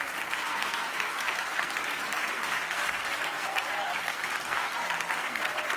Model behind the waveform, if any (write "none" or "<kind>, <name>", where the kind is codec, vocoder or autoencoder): codec, SNAC